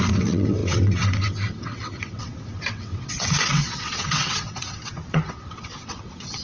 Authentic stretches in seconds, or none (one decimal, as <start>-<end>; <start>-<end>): none